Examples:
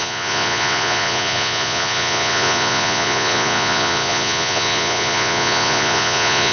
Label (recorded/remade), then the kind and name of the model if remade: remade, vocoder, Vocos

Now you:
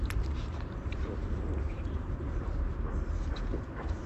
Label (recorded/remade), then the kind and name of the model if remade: recorded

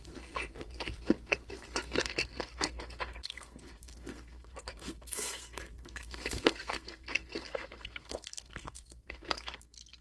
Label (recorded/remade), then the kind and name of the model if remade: remade, codec, SNAC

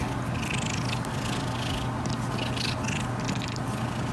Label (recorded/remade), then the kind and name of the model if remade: recorded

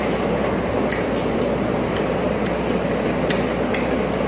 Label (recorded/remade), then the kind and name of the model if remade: recorded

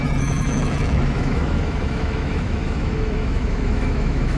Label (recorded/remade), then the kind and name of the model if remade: remade, autoencoder, DAC-VAE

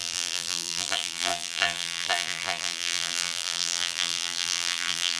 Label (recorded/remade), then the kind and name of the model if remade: remade, vocoder, BigVGAN v2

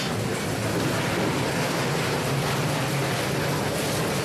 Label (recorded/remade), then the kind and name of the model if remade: recorded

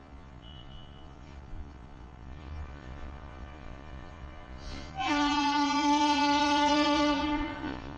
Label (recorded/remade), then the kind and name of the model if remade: remade, vocoder, Vocos